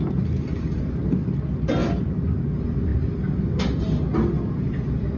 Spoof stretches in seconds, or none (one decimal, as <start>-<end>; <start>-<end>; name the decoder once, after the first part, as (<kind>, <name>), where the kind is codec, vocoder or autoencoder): 0.5-1.2 (vocoder, BigVGAN v2); 1.8-2.4